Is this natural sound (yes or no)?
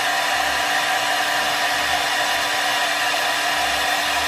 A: no